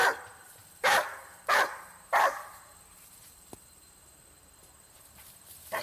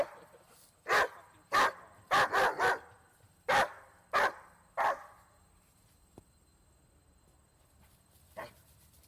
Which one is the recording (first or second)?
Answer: second